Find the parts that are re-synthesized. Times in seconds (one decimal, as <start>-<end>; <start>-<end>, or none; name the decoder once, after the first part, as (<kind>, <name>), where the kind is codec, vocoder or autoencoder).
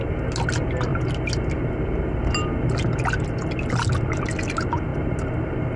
none